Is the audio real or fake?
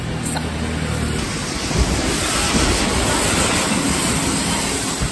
real